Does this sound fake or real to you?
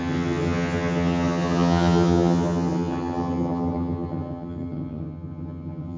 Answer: fake